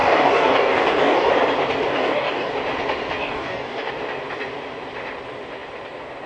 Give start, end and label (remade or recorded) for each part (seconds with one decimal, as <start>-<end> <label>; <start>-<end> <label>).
0.0-1.3 remade; 1.3-1.9 recorded; 1.9-2.5 remade; 2.5-3.2 recorded; 3.2-3.9 remade; 3.9-6.3 recorded